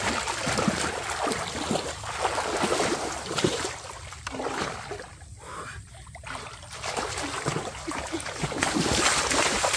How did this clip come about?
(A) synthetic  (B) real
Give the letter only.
B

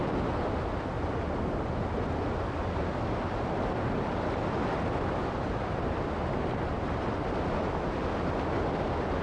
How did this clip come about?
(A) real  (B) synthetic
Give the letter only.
A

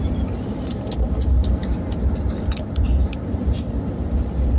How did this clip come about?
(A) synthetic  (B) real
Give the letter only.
B